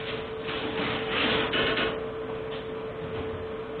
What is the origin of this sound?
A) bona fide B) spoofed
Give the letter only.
A